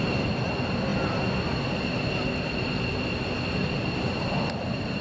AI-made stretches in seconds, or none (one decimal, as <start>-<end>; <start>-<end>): none